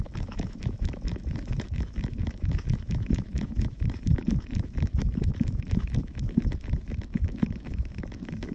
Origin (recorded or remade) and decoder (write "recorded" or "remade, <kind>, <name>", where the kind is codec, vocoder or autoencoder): remade, autoencoder, DAC-VAE